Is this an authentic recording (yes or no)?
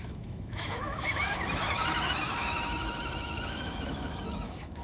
no